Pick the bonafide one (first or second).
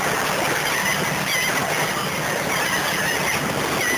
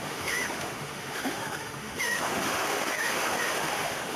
first